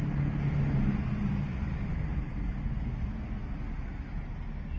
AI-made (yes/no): no